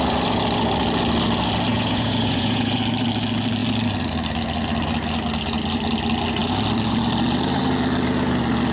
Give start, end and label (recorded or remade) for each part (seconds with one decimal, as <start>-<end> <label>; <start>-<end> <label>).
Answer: 0.0-1.7 recorded; 1.7-2.8 remade; 2.8-8.7 recorded